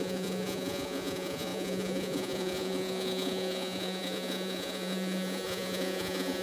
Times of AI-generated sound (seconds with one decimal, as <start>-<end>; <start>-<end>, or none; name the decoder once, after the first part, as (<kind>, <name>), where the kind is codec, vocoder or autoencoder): 0.0-6.4 (vocoder, Vocos)